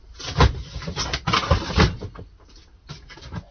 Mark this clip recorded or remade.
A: recorded